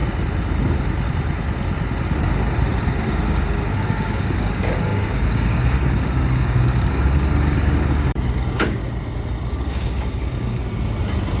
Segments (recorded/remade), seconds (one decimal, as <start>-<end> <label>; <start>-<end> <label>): 0.0-2.8 recorded; 2.8-8.8 remade; 8.8-9.5 recorded; 9.5-10.6 remade; 10.6-11.4 recorded